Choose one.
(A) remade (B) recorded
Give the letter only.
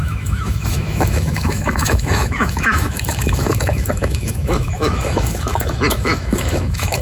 A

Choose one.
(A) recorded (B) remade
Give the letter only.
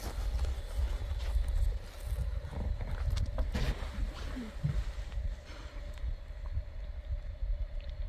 A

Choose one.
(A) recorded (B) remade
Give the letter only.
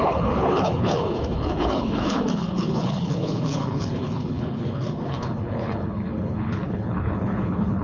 B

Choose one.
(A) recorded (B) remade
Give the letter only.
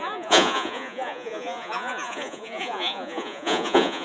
B